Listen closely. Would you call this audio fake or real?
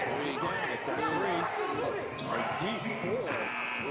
real